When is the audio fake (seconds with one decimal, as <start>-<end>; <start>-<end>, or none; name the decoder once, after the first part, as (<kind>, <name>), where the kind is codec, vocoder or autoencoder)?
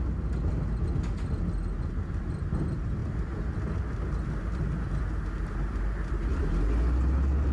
none